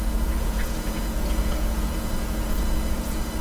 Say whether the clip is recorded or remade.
remade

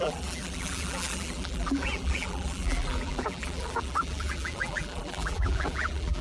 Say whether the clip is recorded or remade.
remade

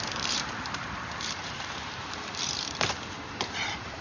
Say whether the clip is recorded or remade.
remade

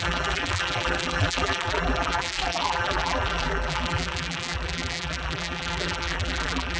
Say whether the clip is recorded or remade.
remade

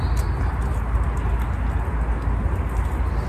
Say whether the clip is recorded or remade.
recorded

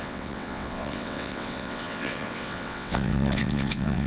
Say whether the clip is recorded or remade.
remade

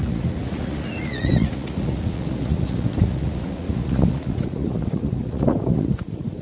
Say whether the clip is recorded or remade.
remade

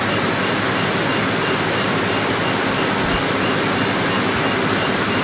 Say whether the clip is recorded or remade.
recorded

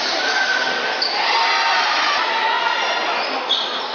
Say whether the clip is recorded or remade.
recorded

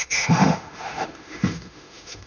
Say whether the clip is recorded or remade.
remade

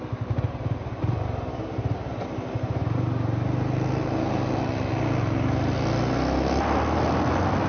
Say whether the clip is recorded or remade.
recorded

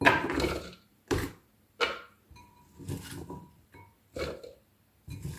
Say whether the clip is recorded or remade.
recorded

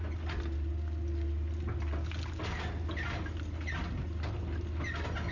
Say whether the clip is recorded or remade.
recorded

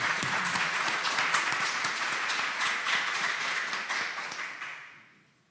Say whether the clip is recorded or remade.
remade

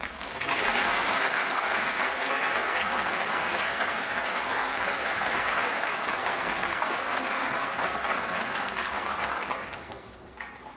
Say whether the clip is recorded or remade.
remade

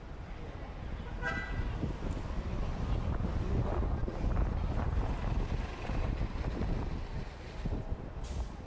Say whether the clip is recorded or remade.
recorded